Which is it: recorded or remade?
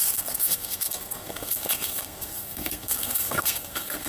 remade